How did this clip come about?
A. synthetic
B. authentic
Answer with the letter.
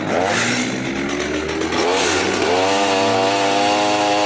B